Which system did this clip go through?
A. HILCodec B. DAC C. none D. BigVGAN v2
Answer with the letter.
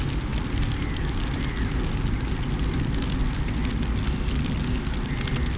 C